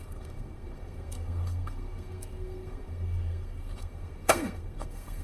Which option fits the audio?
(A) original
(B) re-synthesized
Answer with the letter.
B